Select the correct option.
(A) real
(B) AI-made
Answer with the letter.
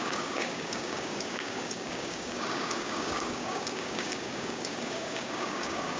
B